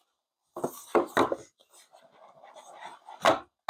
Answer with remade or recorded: recorded